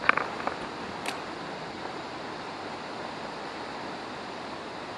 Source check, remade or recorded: remade